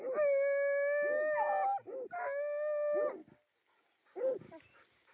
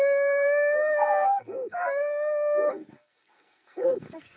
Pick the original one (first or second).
first